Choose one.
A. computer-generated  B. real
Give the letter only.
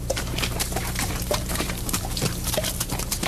A